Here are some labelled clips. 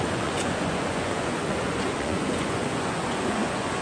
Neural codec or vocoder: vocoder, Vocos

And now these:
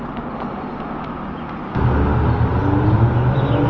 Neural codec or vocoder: none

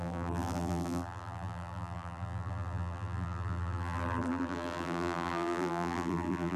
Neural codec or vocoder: vocoder, BigVGAN v2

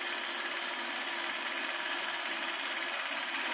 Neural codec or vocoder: none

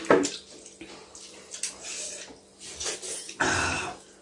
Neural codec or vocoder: none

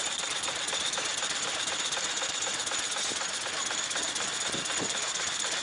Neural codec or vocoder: none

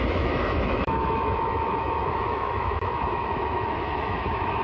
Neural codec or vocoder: autoencoder, DAC-VAE